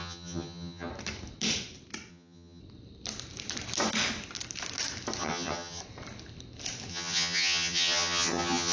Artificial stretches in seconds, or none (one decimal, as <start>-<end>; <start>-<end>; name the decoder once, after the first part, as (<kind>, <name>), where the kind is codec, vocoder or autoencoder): 0.0-0.9 (vocoder, HiFi-GAN); 2.1-2.6; 5.2-5.8; 6.9-8.7